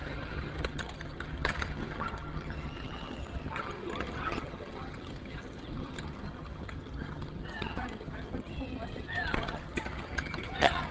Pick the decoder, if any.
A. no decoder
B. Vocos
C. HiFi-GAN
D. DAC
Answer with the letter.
C